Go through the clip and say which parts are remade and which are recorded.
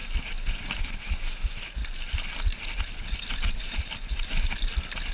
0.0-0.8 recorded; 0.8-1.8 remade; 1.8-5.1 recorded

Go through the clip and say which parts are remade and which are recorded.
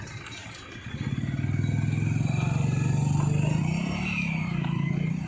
0.0-0.4 remade; 0.4-3.6 recorded; 3.6-5.3 remade